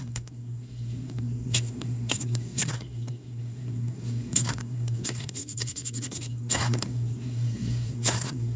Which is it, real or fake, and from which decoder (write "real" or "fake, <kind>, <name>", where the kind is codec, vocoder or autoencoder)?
fake, codec, SNAC